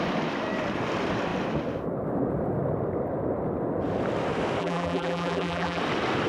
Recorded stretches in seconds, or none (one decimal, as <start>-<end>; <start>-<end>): 0.0-4.6; 5.8-6.3